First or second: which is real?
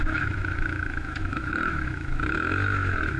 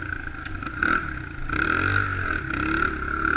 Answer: second